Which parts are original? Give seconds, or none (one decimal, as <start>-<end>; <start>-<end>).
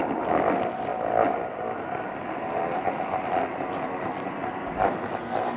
0.0-5.6